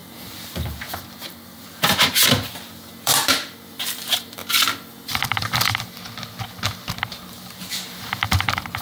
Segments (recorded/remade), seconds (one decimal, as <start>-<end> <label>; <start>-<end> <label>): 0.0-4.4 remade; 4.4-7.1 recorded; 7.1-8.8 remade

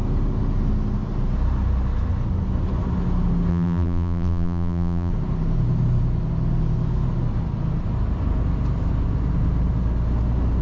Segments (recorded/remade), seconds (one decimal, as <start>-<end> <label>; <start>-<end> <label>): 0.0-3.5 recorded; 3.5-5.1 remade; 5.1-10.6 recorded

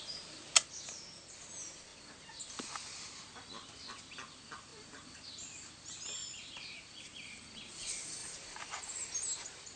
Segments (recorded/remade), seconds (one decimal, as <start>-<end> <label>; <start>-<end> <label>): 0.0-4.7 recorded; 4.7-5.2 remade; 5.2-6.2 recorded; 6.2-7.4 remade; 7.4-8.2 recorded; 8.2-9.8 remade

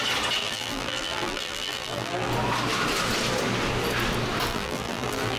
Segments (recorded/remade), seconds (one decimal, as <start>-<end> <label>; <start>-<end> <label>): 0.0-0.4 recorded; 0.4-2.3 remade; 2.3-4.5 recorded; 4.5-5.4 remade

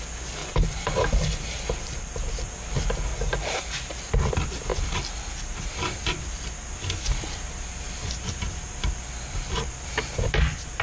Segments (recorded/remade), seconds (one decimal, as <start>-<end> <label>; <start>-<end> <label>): 0.0-0.4 recorded; 0.4-2.0 remade; 2.0-3.1 recorded; 3.1-3.9 remade; 3.9-10.8 recorded

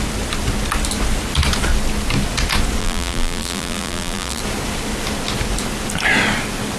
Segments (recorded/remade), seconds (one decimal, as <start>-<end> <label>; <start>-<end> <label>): 0.0-2.8 recorded; 2.8-4.4 remade; 4.4-6.8 recorded

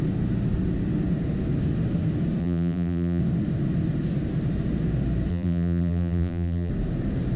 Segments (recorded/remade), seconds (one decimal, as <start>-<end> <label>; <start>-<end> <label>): 0.0-2.4 recorded; 2.4-3.2 remade; 3.2-5.3 recorded; 5.3-6.7 remade; 6.7-7.4 recorded

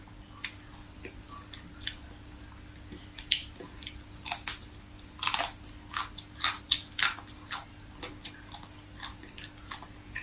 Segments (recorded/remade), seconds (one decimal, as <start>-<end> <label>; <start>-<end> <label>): 0.0-10.2 recorded